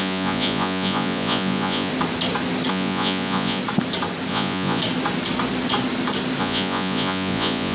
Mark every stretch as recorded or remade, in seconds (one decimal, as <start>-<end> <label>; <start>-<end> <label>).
0.0-1.9 remade; 1.9-2.7 recorded; 2.7-3.6 remade; 3.6-4.3 recorded; 4.3-4.8 remade; 4.8-6.4 recorded; 6.4-7.7 remade